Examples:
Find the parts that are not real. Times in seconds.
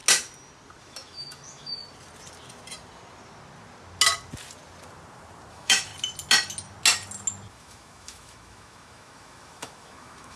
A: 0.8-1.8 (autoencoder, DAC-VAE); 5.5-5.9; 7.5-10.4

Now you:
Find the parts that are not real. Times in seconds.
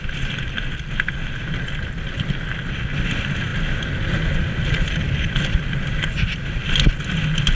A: none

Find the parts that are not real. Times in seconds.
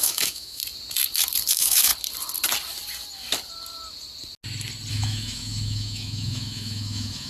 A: 0.0-0.6 (autoencoder, DAC-VAE); 1.5-1.9; 4.9-7.3